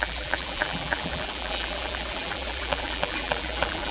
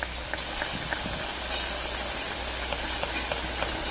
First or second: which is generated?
first